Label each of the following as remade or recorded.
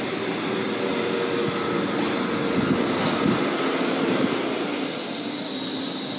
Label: recorded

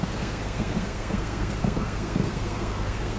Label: remade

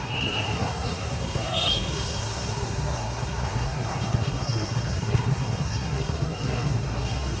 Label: remade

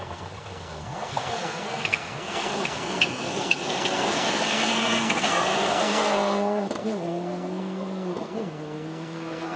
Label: remade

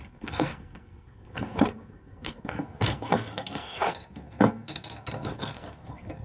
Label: remade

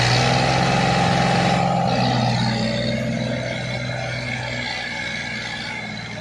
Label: recorded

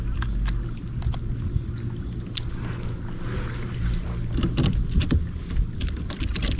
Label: recorded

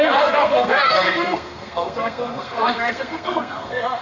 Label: remade